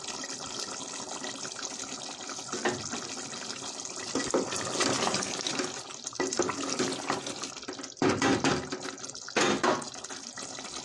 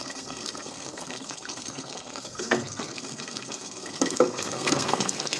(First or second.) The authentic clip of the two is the first